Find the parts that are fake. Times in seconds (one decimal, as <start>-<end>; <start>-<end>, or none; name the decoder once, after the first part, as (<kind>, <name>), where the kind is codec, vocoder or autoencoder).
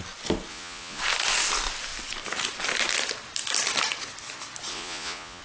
0.5-1.0 (vocoder, Vocos); 4.7-5.4